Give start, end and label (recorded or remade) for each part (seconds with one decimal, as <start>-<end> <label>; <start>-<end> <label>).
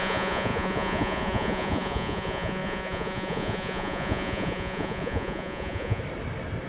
0.0-6.0 remade; 6.0-6.7 recorded